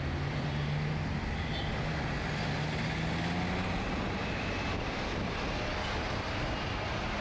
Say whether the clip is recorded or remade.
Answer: recorded